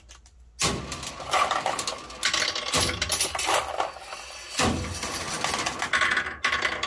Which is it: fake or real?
real